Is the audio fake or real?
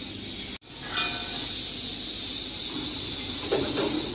real